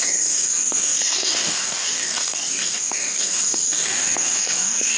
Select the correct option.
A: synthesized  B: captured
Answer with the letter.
A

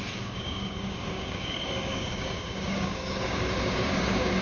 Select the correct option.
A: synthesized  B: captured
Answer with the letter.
A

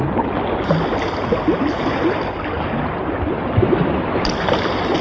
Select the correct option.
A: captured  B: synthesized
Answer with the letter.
A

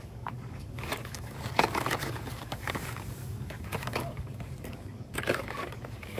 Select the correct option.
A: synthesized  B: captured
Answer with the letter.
A